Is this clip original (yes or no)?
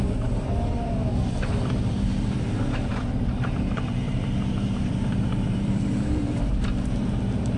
no